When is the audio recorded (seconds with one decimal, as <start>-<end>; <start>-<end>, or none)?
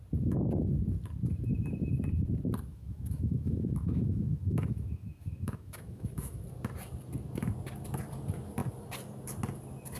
0.0-2.7; 6.4-10.0